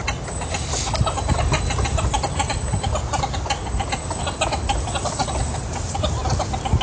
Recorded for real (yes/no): yes